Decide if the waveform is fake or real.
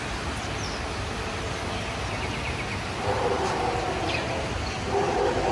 real